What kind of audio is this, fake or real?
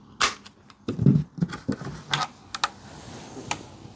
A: real